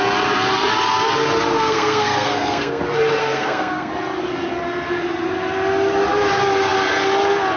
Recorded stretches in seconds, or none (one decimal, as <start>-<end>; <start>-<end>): 0.0-1.5; 2.8-3.2; 3.9-7.6